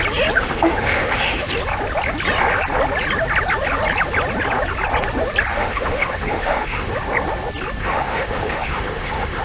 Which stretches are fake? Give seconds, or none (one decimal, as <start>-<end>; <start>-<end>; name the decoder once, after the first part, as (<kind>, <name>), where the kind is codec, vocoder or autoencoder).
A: 0.4-1.5 (autoencoder, DAC-VAE); 5.5-6.9; 7.8-9.4